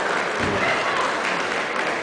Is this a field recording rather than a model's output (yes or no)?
yes